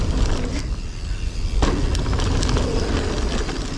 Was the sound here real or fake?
real